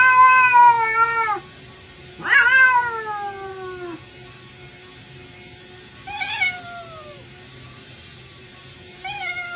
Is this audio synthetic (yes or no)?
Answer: no